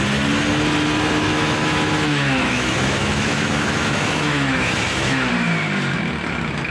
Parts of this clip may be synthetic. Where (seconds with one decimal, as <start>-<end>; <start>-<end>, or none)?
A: 1.3-5.3

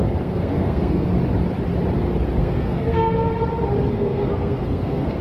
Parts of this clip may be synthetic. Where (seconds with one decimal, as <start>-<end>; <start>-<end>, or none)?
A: 0.0-1.1; 2.4-3.3; 3.9-5.2

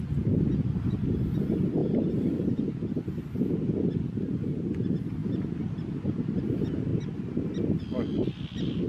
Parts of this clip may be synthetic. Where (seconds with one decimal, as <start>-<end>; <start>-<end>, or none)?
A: none